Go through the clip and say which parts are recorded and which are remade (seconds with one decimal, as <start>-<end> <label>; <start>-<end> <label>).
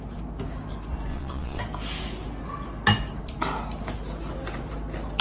0.0-1.1 recorded; 1.1-1.6 remade; 1.6-5.2 recorded